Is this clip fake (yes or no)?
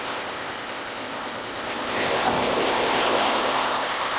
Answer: yes